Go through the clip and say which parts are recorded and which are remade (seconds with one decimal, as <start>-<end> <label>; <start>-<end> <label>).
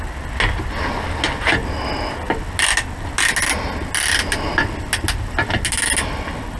0.0-6.6 recorded